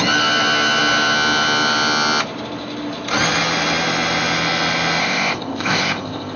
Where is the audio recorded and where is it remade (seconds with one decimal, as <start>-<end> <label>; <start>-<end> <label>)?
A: 0.0-5.0 recorded; 5.0-6.4 remade

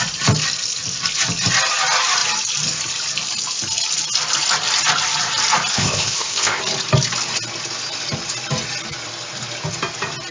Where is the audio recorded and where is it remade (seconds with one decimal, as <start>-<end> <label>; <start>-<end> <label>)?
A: 0.0-5.7 recorded; 5.7-6.6 remade; 6.6-10.3 recorded